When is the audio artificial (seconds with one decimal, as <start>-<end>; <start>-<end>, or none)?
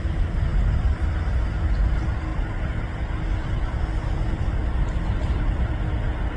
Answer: none